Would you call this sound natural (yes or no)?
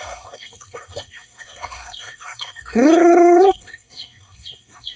no